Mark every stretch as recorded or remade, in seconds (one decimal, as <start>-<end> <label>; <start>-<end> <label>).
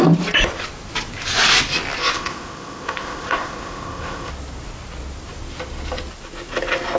0.0-2.0 recorded; 2.0-4.3 remade; 4.3-7.0 recorded